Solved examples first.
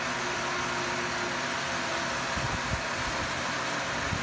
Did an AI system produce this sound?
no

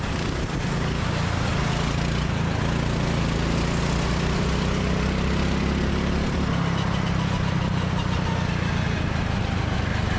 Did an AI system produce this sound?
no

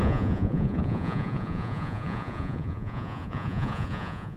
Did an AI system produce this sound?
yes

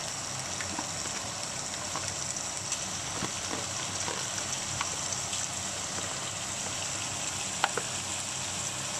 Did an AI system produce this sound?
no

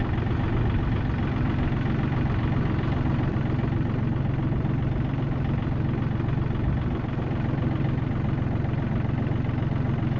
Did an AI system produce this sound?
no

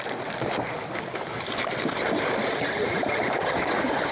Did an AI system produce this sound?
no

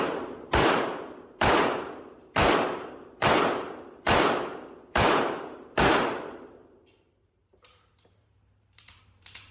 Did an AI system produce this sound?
yes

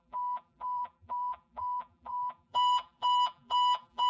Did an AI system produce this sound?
yes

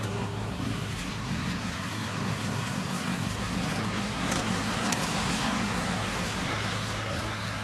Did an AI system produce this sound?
yes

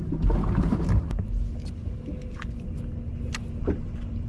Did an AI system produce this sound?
no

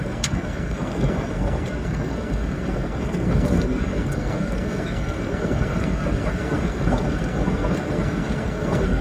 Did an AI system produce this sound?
yes